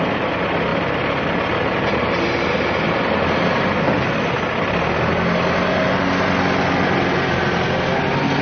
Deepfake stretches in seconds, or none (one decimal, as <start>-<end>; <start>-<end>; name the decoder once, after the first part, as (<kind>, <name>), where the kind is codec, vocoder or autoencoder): none